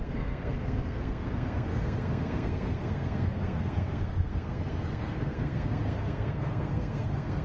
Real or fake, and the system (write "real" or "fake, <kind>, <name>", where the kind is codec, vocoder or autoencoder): fake, codec, SNAC